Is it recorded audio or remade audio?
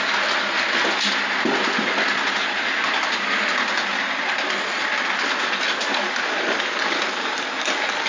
recorded